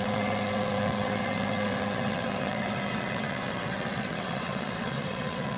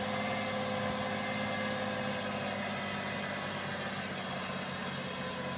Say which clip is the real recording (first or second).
second